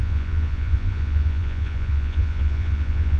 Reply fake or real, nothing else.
fake